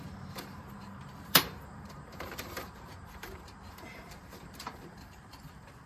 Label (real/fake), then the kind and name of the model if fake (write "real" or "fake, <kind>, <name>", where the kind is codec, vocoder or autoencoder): fake, vocoder, BigVGAN v2